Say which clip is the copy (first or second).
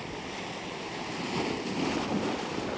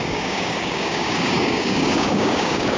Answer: second